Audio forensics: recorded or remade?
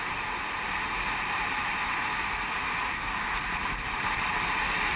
recorded